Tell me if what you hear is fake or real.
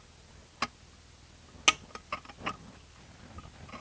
real